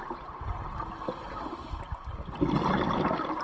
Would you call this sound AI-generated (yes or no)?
no